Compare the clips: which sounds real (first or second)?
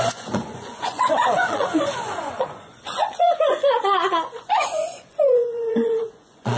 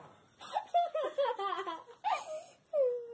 second